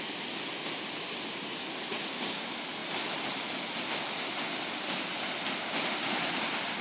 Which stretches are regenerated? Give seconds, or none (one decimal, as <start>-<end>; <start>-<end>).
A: none